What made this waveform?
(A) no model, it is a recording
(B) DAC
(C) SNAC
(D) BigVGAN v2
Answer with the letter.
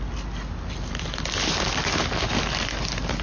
A